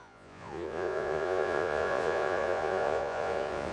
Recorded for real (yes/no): no